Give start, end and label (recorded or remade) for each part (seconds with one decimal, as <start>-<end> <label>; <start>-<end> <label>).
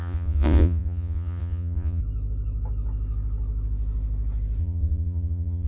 0.0-2.0 remade; 2.0-4.6 recorded; 4.6-5.7 remade